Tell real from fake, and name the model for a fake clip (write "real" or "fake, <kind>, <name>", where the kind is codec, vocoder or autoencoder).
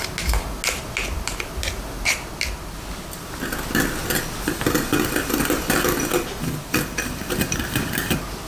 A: real